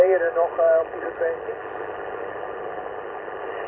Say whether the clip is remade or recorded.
recorded